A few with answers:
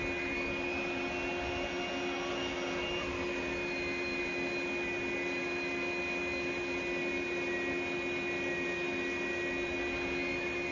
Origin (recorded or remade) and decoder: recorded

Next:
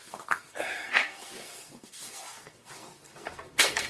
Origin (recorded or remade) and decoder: remade, codec, SNAC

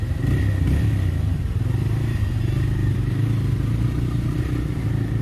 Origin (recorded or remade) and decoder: recorded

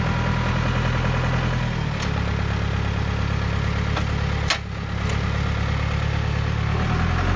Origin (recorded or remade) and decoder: recorded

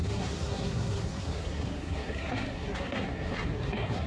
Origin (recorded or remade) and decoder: remade, codec, SNAC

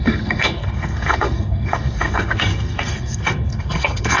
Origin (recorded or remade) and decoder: remade, codec, SNAC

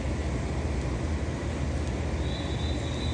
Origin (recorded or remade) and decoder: recorded